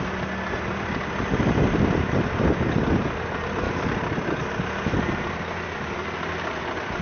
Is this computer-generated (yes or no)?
no